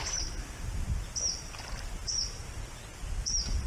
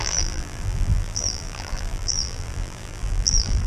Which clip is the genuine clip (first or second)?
first